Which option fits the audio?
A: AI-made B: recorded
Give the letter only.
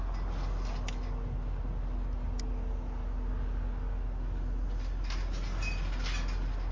B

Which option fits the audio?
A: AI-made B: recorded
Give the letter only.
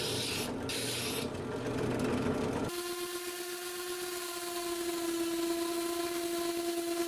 B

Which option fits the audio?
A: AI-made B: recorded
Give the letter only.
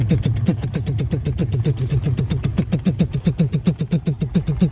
B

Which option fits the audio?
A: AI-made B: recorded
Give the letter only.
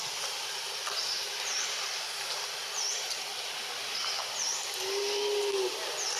B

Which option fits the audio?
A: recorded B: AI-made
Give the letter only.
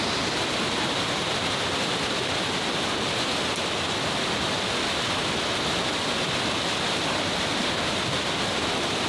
A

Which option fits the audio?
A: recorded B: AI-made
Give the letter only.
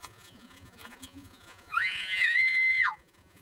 B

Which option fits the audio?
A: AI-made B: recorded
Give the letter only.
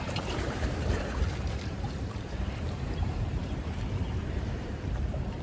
A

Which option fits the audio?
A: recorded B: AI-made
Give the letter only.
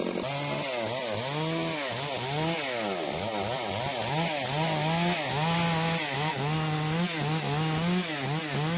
A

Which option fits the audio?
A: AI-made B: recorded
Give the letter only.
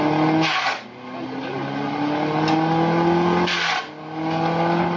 B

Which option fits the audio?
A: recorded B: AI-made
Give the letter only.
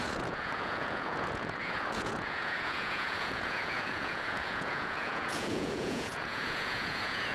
B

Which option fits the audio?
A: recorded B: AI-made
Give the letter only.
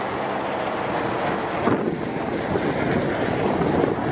A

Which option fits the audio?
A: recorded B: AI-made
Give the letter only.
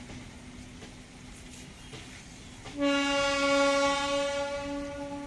A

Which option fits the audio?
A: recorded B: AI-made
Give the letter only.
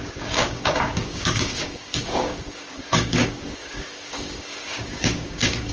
B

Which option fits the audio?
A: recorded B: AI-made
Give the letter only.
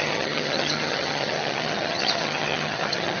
B